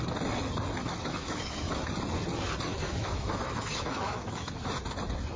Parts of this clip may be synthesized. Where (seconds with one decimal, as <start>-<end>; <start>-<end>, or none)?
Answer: 0.8-1.8; 2.7-4.7